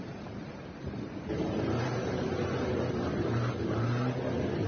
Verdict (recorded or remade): remade